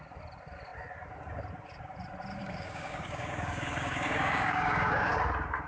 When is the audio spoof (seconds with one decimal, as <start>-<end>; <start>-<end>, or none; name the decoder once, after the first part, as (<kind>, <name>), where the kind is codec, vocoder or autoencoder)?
2.4-5.1 (codec, DAC)